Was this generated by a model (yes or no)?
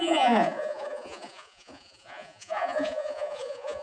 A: yes